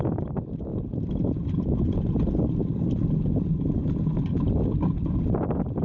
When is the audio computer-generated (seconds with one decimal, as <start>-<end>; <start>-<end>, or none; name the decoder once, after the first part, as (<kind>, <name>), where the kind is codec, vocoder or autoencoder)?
0.7-3.3 (vocoder, BigVGAN v2)